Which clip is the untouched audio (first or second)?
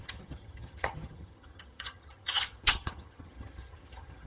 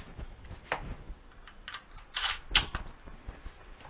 second